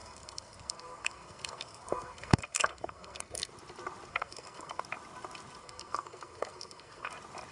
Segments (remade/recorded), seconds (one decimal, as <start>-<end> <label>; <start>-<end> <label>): 0.0-3.5 remade; 3.5-4.1 recorded; 4.1-4.8 remade; 4.8-5.6 recorded; 5.6-7.1 remade; 7.1-7.5 recorded